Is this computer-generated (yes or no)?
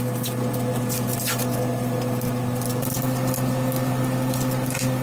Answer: no